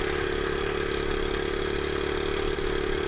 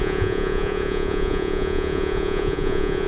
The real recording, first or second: first